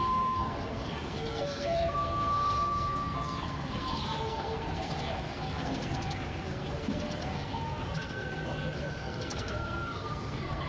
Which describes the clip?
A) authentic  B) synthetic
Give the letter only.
B